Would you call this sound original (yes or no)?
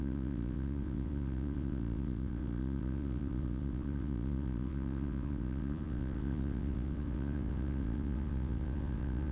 no